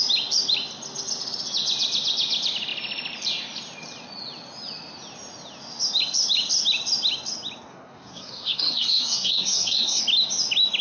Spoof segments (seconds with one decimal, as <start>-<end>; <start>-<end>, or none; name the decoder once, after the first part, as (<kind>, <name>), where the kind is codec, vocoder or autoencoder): 7.7-10.0 (codec, SNAC)